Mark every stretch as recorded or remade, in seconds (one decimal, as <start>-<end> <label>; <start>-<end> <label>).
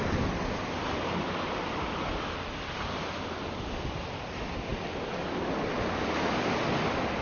0.0-7.2 recorded